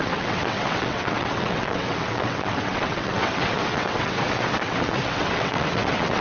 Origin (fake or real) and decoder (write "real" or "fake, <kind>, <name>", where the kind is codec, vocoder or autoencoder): fake, vocoder, WaveNeXt